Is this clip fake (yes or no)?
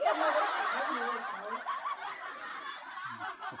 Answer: no